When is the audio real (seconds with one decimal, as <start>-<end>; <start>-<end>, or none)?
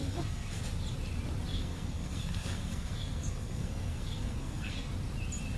0.6-1.5; 4.9-5.6